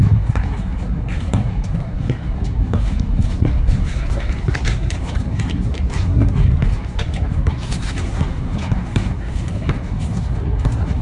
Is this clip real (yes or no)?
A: no